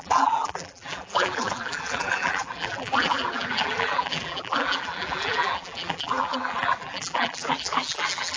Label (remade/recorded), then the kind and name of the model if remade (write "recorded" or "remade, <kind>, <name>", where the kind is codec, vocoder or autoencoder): remade, vocoder, BigVGAN v2